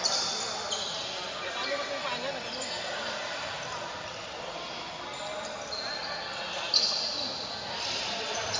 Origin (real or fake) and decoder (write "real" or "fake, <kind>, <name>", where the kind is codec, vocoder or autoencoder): real